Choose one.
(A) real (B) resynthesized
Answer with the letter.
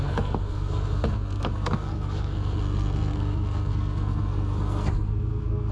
B